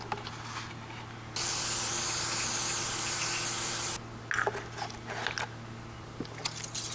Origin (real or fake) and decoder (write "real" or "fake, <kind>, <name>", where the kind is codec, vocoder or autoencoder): real